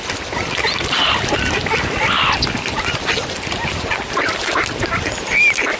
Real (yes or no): yes